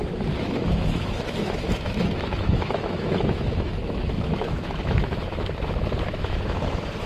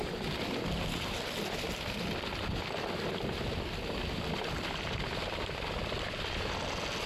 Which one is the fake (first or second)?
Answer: first